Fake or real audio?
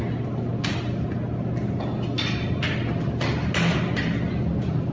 real